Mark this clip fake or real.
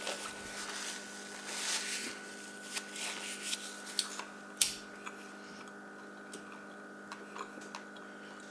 real